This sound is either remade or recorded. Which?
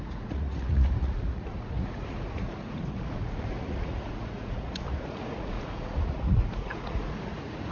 remade